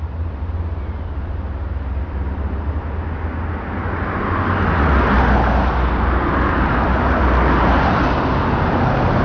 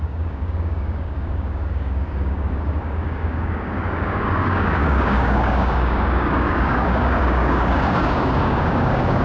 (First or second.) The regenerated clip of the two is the second